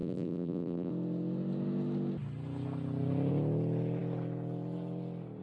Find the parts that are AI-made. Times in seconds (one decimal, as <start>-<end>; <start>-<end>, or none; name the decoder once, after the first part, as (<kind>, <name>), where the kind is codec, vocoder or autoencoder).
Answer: 0.0-0.9 (vocoder, BigVGAN v2)